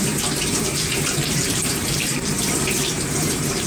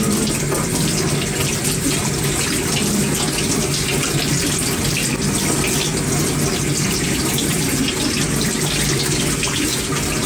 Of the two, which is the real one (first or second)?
second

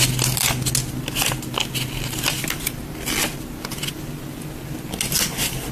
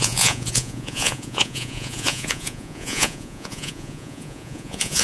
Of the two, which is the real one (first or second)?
first